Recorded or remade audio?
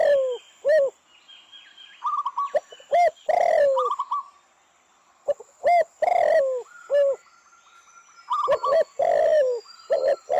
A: recorded